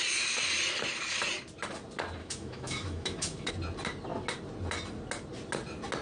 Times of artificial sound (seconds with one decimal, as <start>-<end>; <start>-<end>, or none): 2.2-3.5